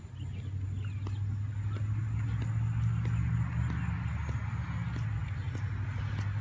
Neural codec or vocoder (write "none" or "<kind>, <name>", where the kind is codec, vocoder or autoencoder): none